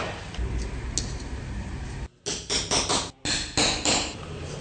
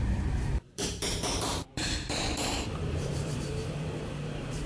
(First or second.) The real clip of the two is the first